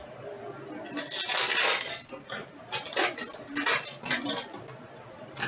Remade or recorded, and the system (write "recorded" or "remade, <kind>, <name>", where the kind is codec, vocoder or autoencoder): recorded